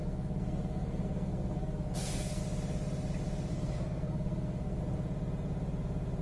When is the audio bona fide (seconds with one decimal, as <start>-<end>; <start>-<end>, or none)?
2.4-3.5; 4.8-6.2